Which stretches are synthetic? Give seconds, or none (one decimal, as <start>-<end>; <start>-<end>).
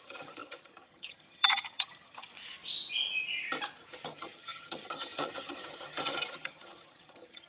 0.0-2.3; 4.1-7.5